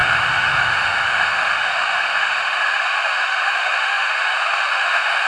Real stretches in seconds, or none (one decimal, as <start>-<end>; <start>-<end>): none